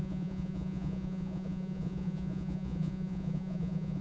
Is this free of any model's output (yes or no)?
no